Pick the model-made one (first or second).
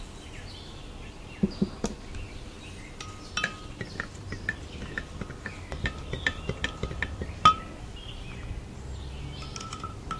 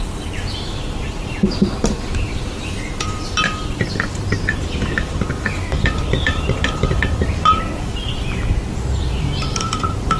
second